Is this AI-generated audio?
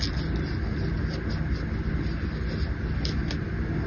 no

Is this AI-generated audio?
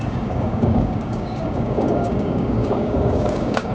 yes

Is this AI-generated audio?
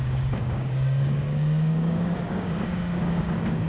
yes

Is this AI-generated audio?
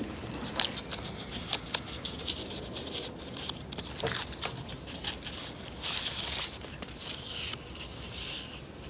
no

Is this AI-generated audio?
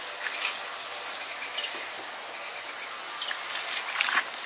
no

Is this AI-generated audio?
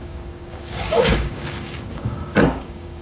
yes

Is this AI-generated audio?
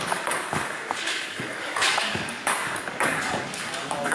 yes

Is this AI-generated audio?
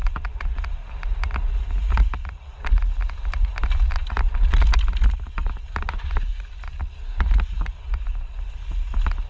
no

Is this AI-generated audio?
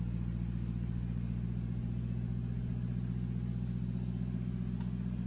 no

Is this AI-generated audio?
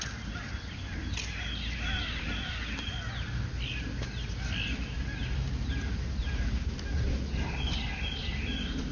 no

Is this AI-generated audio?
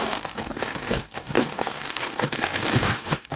yes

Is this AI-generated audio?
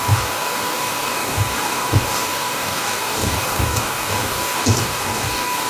yes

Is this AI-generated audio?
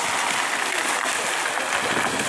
no